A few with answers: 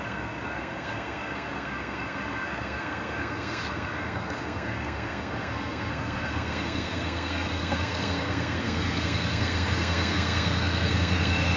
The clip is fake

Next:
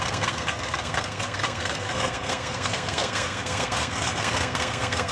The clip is fake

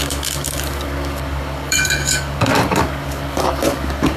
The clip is fake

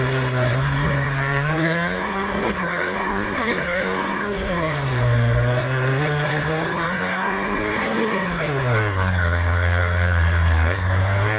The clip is fake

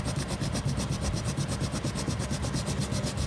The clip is real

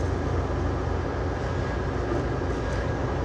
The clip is real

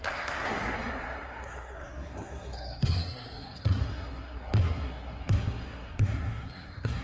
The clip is fake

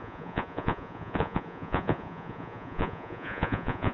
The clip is fake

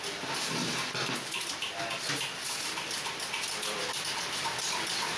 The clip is real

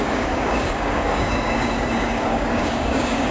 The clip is fake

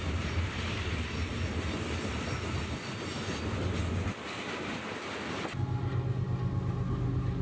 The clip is real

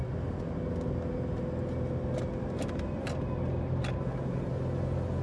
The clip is real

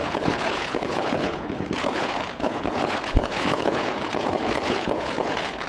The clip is fake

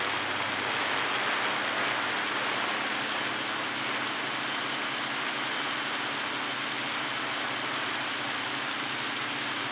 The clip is real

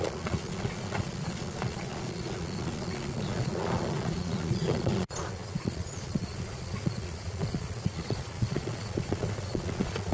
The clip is fake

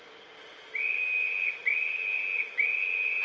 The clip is real